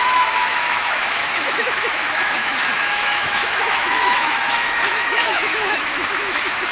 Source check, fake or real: fake